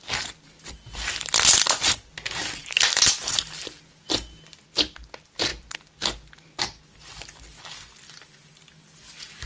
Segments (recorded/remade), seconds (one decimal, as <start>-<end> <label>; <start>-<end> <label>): 0.0-9.5 recorded